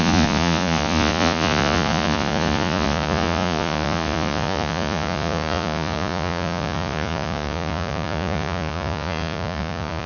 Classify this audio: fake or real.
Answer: fake